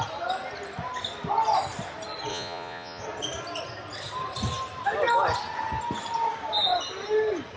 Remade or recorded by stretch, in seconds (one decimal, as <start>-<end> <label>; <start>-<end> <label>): 0.0-2.3 recorded; 2.3-3.0 remade; 3.0-7.6 recorded